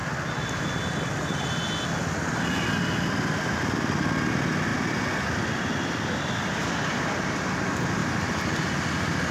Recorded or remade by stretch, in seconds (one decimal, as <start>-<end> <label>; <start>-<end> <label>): 0.0-9.3 recorded